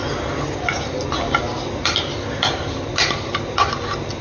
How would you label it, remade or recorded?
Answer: recorded